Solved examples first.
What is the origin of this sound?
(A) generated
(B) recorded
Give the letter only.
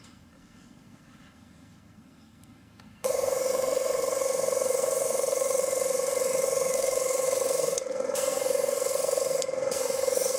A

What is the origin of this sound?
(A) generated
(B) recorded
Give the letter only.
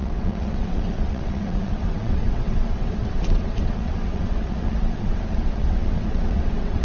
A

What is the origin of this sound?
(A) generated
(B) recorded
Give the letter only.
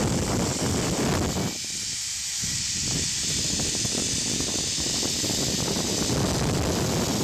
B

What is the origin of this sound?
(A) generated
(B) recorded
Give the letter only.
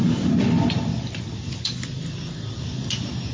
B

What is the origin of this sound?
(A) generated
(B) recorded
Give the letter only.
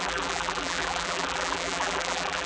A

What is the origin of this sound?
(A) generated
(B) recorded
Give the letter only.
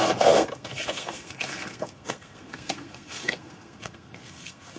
A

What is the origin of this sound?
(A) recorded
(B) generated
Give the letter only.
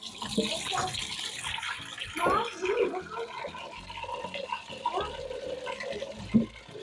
A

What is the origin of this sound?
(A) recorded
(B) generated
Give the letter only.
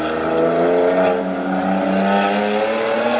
A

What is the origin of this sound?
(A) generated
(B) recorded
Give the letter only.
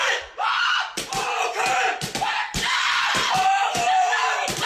A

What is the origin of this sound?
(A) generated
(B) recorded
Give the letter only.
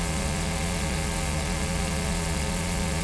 A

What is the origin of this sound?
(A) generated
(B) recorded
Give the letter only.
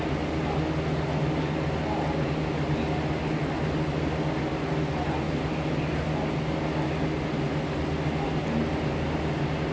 B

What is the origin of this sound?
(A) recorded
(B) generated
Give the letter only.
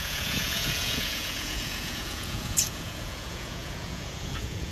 B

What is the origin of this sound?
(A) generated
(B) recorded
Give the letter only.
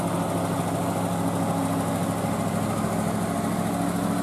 B